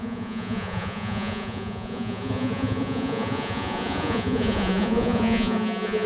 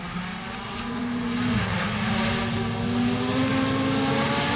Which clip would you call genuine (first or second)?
second